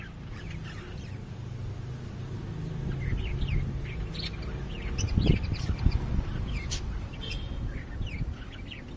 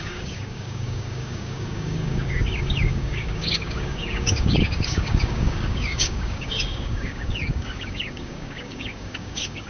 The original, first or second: first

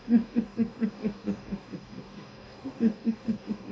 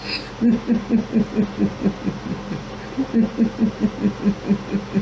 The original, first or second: second